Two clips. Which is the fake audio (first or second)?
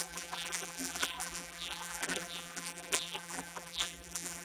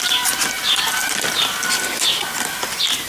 first